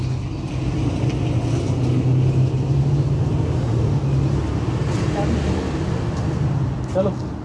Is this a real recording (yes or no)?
yes